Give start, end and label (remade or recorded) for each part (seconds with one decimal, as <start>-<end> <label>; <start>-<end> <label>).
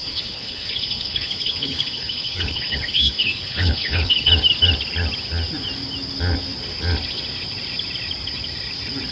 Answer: 0.0-4.3 remade; 4.3-9.1 recorded